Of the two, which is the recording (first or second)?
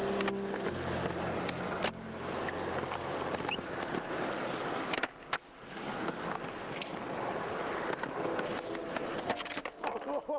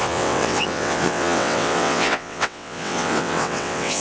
first